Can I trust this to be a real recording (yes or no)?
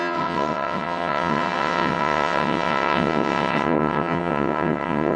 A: no